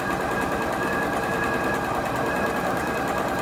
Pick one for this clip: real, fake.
fake